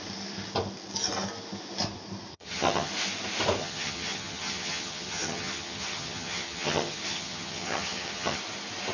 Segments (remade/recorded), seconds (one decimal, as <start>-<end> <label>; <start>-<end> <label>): 0.0-2.3 recorded; 2.3-2.9 remade; 2.9-3.6 recorded; 3.6-8.4 remade; 8.4-8.9 recorded